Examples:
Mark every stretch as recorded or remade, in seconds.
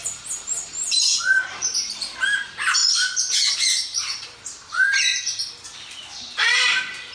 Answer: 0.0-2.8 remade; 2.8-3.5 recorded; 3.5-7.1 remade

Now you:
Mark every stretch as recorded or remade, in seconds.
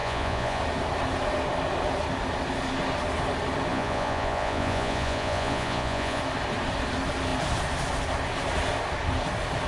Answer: 0.0-0.6 remade; 0.6-3.7 recorded; 3.7-6.2 remade; 6.2-9.7 recorded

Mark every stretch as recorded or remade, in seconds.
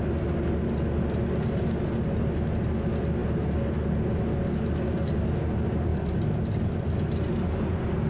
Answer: 0.0-8.1 recorded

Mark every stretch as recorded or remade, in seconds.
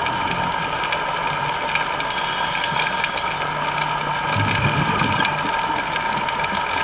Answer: 0.0-6.8 recorded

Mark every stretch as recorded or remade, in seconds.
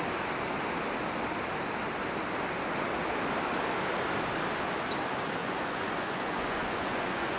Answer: 0.0-5.4 recorded; 5.4-7.4 remade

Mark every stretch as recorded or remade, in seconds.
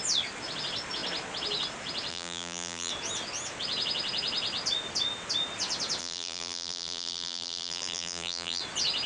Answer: 0.0-2.1 recorded; 2.1-2.9 remade; 2.9-6.0 recorded; 6.0-8.6 remade; 8.6-9.1 recorded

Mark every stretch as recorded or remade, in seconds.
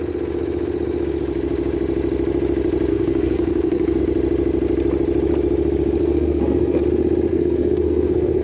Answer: 0.0-2.9 recorded; 2.9-4.0 remade; 4.0-6.0 recorded; 6.0-6.8 remade; 6.8-7.3 recorded; 7.3-8.4 remade